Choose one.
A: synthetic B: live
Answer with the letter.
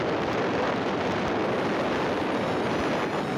B